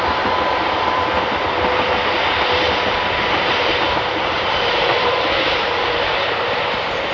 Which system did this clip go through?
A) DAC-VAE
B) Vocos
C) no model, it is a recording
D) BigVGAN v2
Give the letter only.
D